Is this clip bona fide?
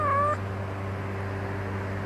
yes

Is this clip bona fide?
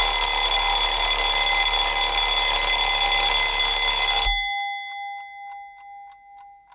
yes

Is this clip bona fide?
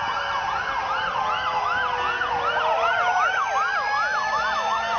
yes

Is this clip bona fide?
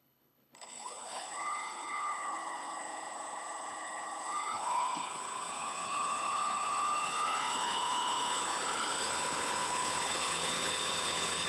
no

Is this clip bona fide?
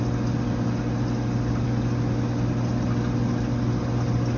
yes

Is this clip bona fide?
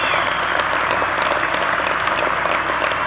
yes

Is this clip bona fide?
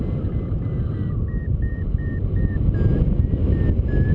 yes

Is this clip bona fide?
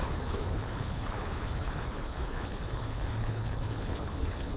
no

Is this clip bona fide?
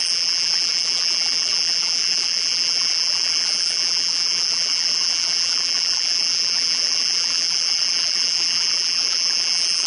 no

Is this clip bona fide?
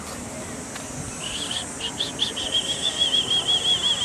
yes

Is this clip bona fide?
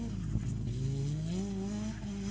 yes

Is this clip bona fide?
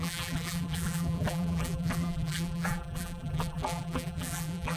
no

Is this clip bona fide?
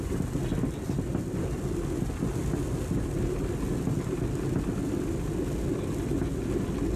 yes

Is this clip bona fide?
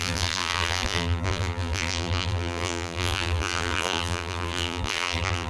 no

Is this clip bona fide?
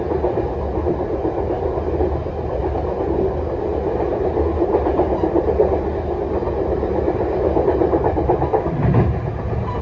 yes